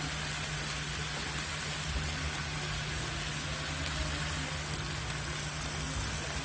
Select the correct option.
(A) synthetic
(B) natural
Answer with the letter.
B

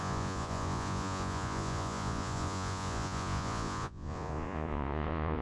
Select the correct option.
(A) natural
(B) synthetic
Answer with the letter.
B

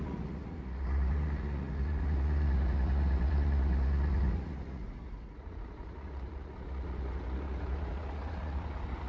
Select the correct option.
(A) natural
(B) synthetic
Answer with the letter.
B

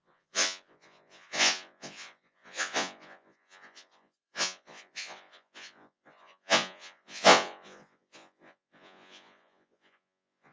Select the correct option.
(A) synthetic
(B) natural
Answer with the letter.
A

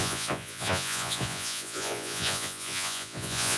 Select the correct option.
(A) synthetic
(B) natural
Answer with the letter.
A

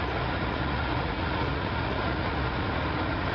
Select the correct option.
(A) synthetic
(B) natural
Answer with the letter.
A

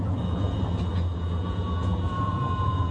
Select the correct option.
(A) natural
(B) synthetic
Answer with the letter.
B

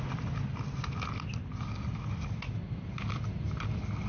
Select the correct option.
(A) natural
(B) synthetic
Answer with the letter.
A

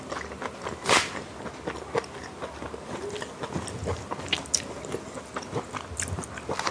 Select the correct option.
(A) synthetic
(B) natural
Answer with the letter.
B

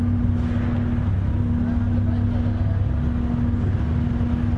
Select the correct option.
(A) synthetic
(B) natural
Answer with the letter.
B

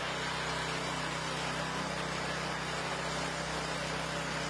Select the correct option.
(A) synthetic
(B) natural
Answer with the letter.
B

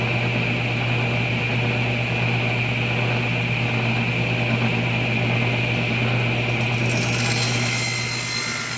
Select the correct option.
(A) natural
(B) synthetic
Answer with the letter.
A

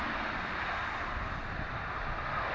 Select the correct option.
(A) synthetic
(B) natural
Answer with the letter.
B